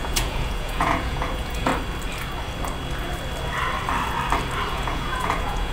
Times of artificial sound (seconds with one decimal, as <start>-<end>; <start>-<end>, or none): 0.0-1.7; 4.7-5.7

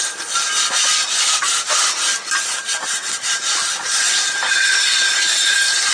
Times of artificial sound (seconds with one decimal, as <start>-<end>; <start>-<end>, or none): none

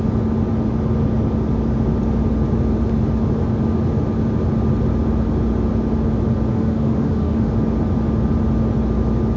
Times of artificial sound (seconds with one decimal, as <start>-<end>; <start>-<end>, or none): 6.5-7.5

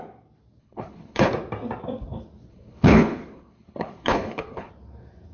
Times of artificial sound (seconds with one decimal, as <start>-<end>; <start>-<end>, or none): 0.6-1.3; 2.5-4.7

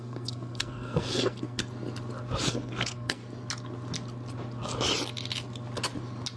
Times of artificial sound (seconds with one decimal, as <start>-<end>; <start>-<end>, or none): 0.0-1.6; 2.5-3.2